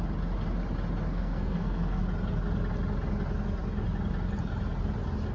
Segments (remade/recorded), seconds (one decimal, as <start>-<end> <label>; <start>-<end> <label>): 0.0-1.1 recorded; 1.1-2.0 remade; 2.0-5.3 recorded